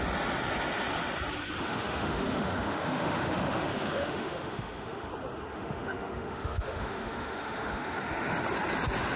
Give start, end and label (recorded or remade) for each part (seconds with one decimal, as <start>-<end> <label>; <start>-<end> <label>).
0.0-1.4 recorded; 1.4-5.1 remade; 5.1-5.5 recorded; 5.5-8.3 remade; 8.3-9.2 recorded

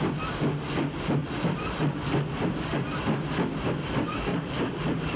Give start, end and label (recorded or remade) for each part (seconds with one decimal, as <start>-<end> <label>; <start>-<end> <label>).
0.0-4.3 recorded; 4.3-5.2 remade

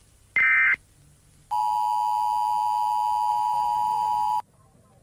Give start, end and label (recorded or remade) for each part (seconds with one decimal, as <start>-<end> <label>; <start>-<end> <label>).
0.0-3.3 recorded; 3.3-5.0 remade

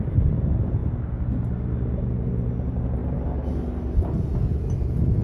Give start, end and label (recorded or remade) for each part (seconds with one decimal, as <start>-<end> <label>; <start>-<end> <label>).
0.0-5.2 recorded

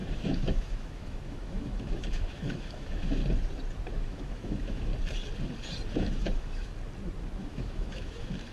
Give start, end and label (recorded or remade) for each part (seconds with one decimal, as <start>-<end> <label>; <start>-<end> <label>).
0.0-3.2 remade; 3.2-3.9 recorded; 3.9-4.9 remade; 4.9-5.9 recorded; 5.9-6.7 remade; 6.7-7.4 recorded; 7.4-8.5 remade